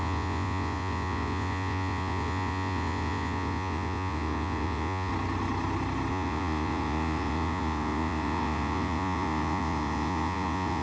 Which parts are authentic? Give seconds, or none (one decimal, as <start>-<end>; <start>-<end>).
5.1-6.1